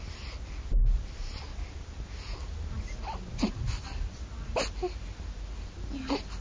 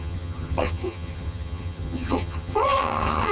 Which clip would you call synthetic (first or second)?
second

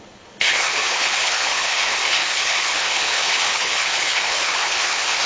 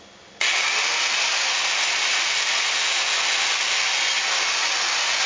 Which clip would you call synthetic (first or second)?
first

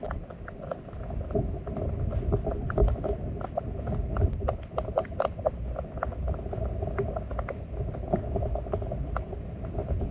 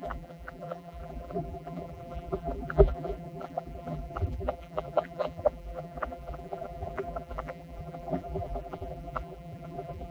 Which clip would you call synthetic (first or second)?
second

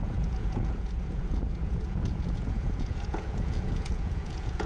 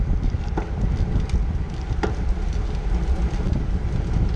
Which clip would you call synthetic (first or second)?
first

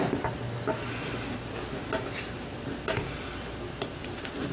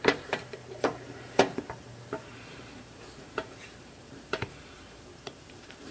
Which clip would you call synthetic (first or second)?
second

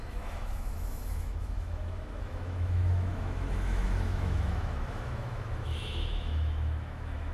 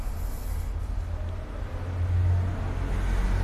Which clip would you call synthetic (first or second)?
first